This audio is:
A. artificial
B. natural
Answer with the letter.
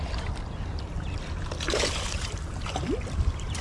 A